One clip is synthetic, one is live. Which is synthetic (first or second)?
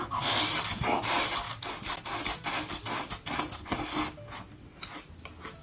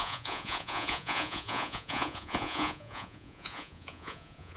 second